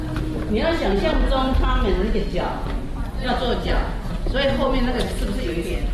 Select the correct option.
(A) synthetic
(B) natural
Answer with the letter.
B